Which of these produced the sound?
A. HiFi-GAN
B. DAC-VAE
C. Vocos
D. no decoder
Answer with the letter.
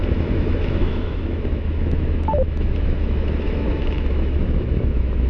B